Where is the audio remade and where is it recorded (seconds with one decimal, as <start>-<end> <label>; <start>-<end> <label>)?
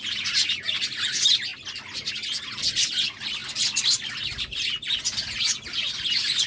0.0-6.5 recorded